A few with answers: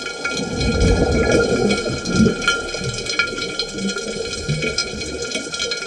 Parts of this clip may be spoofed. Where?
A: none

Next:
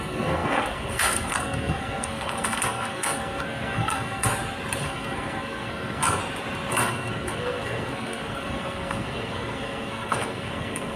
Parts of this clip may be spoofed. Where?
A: 0.0-4.3 (codec, SNAC); 4.8-6.2; 6.7-11.0

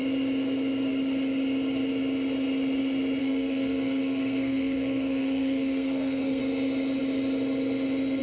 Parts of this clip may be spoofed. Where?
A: 3.2-6.4 (codec, SNAC)

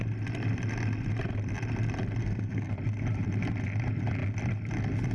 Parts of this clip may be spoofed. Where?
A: 2.2-2.7 (codec, SNAC)

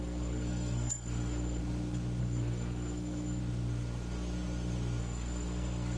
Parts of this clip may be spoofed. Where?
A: 0.0-1.6 (codec, SNAC); 2.2-3.4; 5.0-6.0

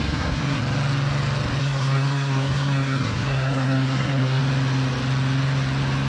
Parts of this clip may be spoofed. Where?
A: 0.0-0.6 (codec, SNAC); 1.6-4.4